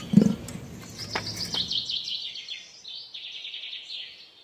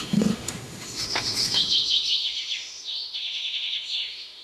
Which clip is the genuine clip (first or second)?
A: first